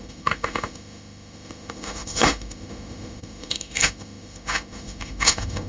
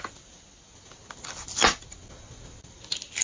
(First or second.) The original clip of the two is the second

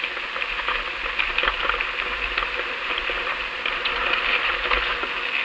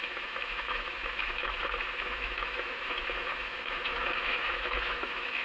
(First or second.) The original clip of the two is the first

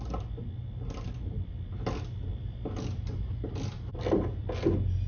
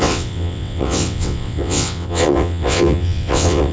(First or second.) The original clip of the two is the first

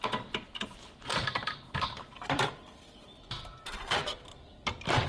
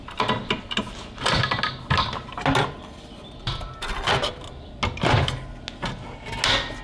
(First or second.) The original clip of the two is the second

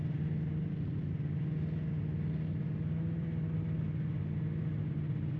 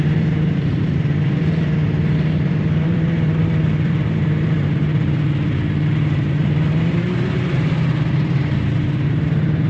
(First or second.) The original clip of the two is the first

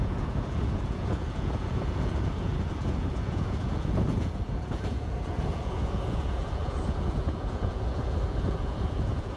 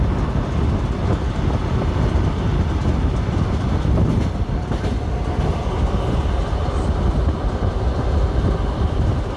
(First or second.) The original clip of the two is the second